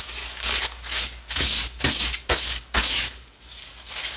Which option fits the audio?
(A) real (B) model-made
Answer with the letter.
B